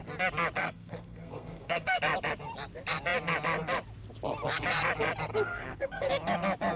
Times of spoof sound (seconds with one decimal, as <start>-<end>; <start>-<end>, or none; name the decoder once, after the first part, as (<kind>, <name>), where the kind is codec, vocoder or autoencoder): 0.6-2.0 (codec, SNAC); 5.3-6.1